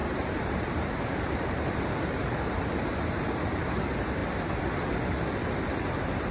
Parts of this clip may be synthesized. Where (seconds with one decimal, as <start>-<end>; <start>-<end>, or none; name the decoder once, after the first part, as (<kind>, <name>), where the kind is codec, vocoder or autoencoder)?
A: 0.0-4.2 (vocoder, BigVGAN v2); 5.1-6.3